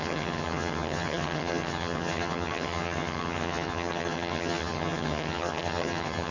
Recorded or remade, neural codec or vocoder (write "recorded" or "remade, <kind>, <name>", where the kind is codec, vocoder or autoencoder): remade, vocoder, HiFi-GAN